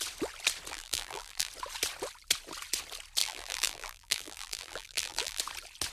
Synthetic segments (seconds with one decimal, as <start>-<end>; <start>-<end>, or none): 0.7-1.5; 3.2-5.4